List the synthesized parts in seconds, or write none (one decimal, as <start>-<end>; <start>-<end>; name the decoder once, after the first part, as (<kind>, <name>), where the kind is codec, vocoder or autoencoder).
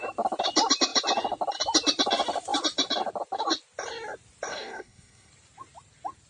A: 4.5-5.3 (codec, SNAC)